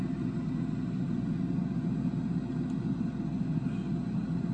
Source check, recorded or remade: recorded